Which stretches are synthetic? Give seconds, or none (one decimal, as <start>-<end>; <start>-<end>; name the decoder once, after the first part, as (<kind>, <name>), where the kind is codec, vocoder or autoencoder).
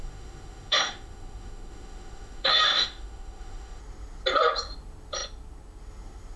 0.0-3.8 (autoencoder, DAC-VAE)